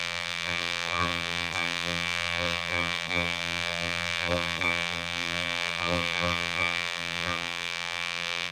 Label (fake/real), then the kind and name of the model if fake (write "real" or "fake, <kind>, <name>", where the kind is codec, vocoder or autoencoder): fake, vocoder, BigVGAN v2